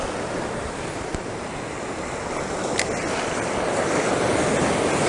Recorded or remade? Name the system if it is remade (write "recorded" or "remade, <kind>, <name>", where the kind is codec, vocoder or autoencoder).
recorded